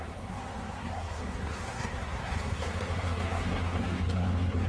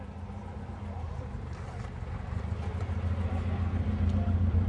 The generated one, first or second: first